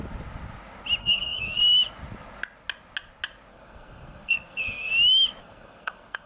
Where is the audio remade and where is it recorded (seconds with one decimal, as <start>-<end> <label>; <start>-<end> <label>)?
0.0-1.0 recorded; 1.0-1.6 remade; 1.6-3.5 recorded; 3.5-4.9 remade; 4.9-5.4 recorded; 5.4-6.3 remade